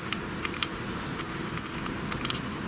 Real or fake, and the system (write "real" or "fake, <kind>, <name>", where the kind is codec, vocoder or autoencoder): real